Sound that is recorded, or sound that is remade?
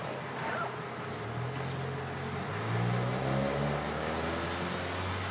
recorded